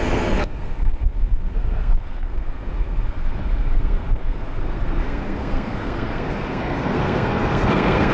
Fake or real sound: fake